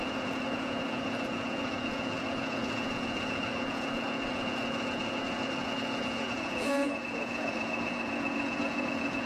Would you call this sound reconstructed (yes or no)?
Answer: yes